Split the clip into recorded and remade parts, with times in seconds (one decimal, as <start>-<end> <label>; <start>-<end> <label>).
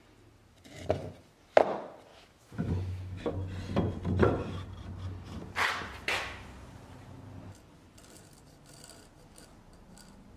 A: 0.0-2.1 recorded; 2.1-3.3 remade; 3.3-10.4 recorded